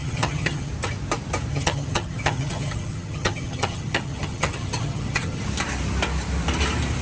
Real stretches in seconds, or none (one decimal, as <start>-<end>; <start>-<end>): 0.7-1.5; 5.4-7.0